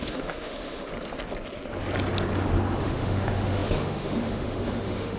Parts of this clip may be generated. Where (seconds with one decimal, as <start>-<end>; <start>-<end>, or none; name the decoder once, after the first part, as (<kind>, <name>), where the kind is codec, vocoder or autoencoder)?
0.0-0.9 (autoencoder, DAC-VAE); 2.8-5.2